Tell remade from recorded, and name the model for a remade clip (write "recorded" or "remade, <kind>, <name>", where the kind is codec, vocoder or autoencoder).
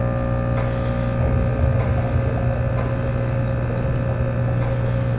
recorded